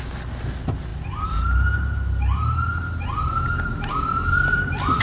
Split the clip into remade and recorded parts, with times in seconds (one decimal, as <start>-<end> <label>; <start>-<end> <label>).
0.0-5.0 recorded